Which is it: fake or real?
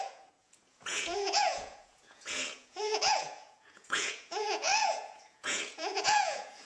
fake